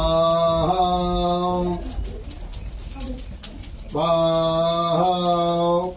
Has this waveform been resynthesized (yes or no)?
no